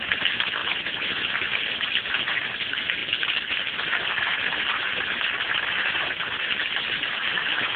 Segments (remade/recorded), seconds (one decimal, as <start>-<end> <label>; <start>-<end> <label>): 0.0-7.8 recorded